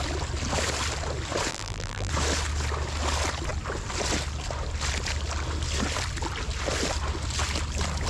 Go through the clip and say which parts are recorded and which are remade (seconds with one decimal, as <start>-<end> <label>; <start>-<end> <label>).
0.0-1.5 recorded; 1.5-2.1 remade; 2.1-8.1 recorded